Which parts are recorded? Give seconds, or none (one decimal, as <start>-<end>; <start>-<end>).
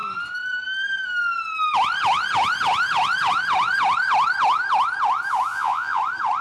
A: 0.0-5.5; 6.0-6.4